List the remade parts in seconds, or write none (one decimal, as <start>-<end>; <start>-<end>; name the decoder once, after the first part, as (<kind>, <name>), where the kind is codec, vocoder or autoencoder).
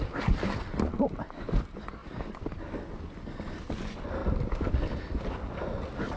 none